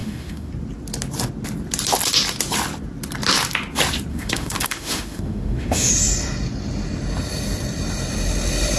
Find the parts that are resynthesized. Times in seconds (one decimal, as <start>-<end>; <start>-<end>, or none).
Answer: 0.0-0.5; 4.1-5.9